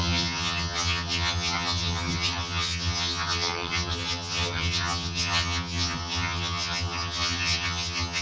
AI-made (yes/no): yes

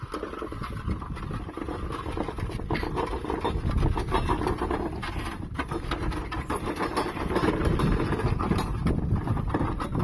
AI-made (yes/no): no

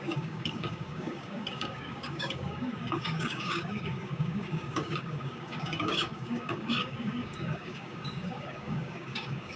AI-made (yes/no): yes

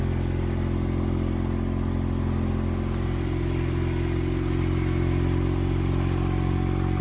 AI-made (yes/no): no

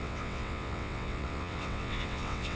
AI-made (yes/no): yes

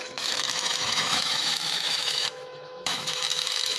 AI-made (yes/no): yes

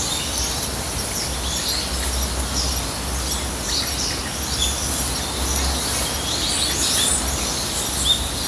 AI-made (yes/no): no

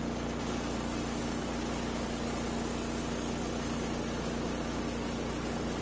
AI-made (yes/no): no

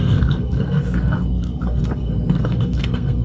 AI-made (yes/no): yes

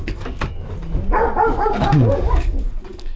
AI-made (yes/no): yes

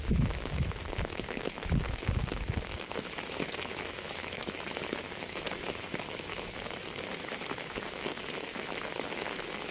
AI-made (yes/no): yes